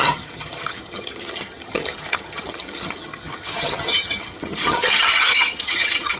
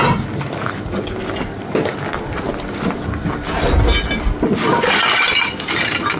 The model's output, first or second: first